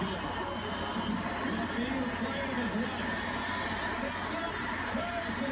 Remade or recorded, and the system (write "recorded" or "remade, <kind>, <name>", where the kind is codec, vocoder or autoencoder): recorded